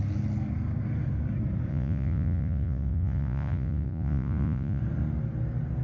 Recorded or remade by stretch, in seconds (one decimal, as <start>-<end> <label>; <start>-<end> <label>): 0.0-1.7 recorded; 1.7-4.8 remade; 4.8-5.8 recorded